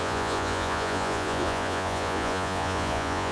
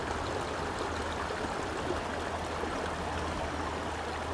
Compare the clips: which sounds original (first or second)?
second